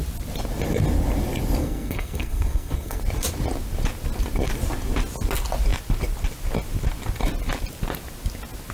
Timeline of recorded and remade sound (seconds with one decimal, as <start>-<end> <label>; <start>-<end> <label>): 0.0-1.6 recorded; 1.6-3.0 remade; 3.0-8.7 recorded